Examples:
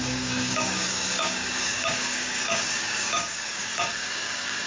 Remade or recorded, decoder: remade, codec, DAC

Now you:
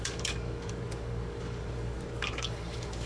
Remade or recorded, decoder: remade, codec, DAC